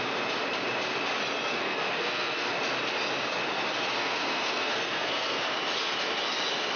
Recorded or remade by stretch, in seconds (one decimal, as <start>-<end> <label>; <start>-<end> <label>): 0.0-1.5 recorded; 1.5-2.5 remade; 2.5-4.0 recorded; 4.0-5.5 remade; 5.5-6.8 recorded